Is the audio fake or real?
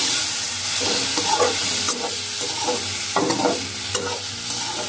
real